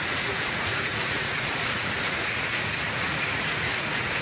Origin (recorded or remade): remade